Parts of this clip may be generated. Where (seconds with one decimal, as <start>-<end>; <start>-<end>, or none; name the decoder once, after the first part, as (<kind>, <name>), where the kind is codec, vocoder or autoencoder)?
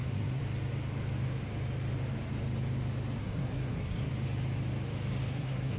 0.0-0.4 (codec, SNAC); 3.2-4.1; 5.3-5.8